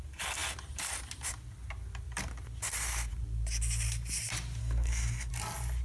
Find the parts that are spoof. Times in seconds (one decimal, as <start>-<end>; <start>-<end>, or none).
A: 4.6-5.3